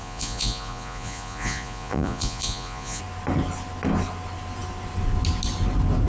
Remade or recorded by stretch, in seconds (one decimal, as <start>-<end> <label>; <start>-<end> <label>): 0.0-3.0 remade; 3.0-6.1 recorded